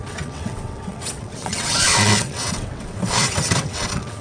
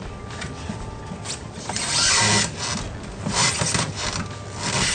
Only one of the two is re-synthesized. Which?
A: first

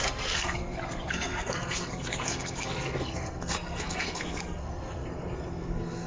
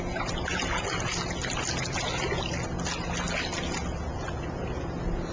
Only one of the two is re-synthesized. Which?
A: first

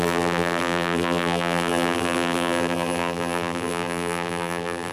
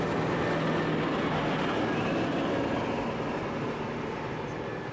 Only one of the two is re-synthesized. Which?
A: first